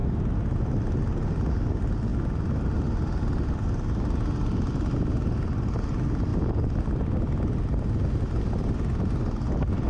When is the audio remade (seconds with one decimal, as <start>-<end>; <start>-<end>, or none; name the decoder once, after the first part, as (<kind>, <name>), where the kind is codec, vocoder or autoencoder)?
none

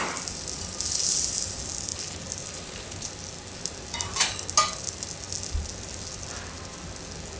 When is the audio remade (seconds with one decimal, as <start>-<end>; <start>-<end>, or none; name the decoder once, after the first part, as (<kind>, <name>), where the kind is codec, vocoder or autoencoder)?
none

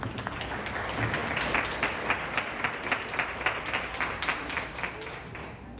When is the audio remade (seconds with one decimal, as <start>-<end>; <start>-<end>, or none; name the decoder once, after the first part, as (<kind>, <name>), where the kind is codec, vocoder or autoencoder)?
none

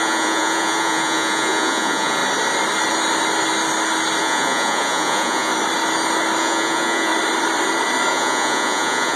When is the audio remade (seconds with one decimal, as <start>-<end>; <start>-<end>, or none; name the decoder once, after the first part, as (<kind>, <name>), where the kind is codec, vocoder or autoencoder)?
0.0-2.2 (vocoder, Vocos); 4.2-5.5; 6.4-7.1; 8.1-9.2

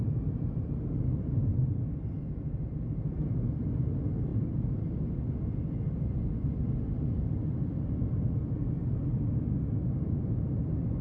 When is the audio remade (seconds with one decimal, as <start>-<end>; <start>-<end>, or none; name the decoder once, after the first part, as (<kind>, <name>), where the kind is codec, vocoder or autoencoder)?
none